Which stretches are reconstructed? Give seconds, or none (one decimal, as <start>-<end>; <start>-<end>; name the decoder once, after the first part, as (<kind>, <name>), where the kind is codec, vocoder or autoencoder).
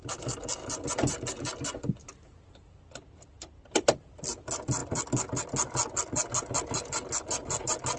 none